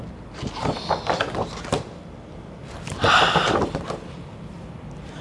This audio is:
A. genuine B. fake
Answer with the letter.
A